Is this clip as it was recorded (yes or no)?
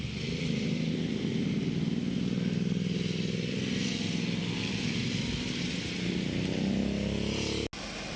yes